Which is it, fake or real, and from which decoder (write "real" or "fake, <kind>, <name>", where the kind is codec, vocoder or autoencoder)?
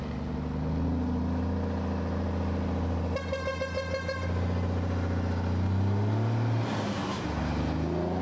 real